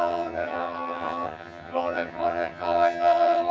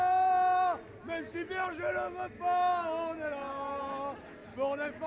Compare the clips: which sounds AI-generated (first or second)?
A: first